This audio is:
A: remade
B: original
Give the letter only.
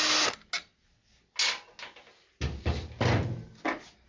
B